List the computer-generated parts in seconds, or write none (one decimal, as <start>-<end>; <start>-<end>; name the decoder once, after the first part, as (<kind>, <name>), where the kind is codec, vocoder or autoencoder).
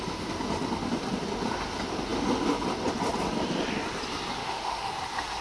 4.4-4.9 (autoencoder, DAC-VAE)